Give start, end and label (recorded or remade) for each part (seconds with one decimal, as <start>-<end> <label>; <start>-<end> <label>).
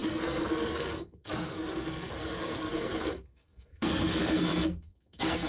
0.0-5.5 remade